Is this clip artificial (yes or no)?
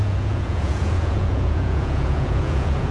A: yes